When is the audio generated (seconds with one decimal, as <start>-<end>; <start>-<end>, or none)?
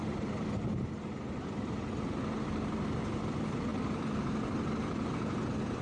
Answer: none